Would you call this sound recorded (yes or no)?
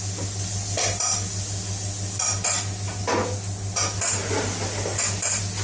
yes